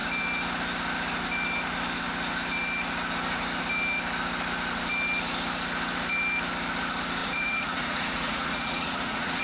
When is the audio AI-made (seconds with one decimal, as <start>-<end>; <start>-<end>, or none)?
7.2-9.4